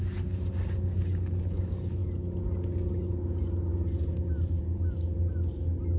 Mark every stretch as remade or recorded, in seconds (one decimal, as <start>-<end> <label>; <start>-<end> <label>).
0.0-6.0 recorded